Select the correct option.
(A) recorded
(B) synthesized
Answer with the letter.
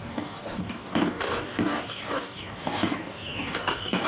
B